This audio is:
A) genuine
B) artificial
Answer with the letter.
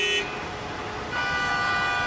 A